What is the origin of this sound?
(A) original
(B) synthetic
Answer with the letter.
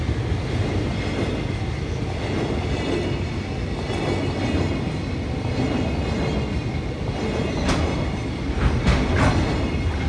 A